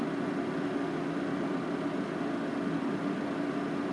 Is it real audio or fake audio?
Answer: real